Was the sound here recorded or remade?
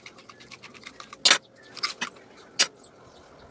recorded